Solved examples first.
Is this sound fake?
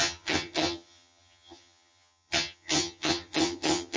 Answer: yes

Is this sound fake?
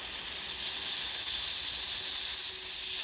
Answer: no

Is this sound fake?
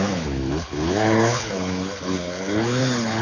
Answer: yes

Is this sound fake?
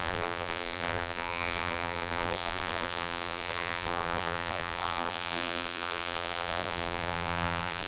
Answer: yes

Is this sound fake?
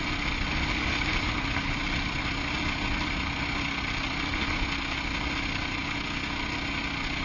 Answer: no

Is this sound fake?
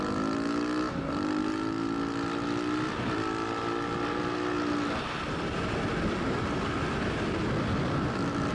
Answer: no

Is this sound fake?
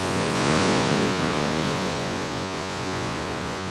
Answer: yes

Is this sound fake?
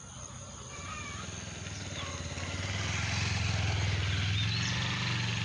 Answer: no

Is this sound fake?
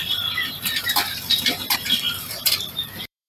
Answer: yes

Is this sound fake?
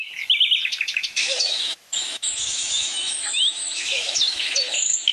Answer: yes